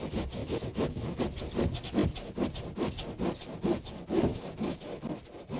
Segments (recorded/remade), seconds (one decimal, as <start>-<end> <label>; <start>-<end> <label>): 0.0-0.4 recorded; 0.4-1.2 remade; 1.2-4.3 recorded; 4.3-5.0 remade; 5.0-5.6 recorded